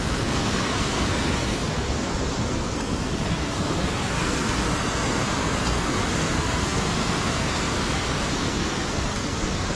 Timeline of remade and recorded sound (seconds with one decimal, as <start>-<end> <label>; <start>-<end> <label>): 0.0-9.7 remade